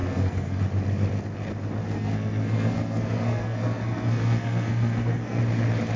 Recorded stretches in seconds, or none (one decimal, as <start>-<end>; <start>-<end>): 0.6-1.8; 5.4-6.0